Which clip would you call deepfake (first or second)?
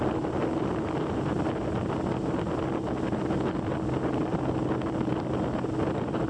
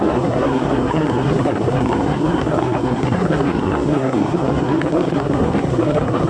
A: second